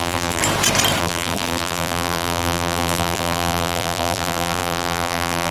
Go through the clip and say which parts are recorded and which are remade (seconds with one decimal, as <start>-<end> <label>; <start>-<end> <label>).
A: 0.0-0.4 remade; 0.4-1.0 recorded; 1.0-5.5 remade